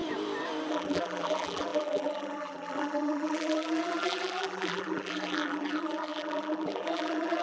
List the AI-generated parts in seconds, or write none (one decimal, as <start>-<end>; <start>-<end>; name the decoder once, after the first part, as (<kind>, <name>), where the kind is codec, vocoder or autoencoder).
0.7-7.4 (vocoder, BigVGAN v2)